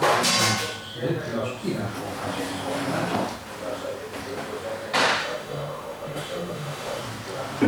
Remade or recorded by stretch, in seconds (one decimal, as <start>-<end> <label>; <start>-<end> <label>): 0.0-5.2 recorded; 5.2-7.0 remade; 7.0-7.7 recorded